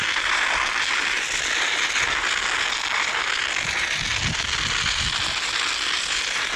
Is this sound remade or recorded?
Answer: recorded